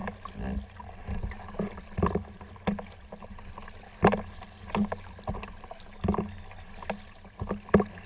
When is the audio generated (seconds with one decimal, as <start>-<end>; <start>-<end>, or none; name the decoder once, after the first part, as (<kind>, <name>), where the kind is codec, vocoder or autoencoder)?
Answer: none